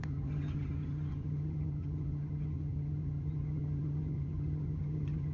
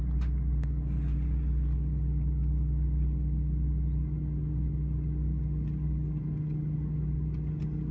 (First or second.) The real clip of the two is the second